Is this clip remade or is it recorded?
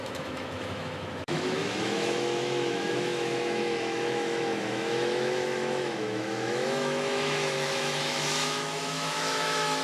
remade